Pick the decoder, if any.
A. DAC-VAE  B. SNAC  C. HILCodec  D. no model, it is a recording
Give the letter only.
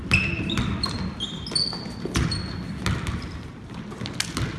D